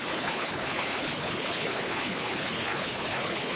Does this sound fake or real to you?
fake